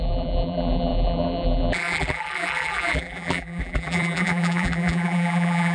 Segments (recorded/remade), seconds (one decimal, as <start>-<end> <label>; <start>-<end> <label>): 0.0-5.7 remade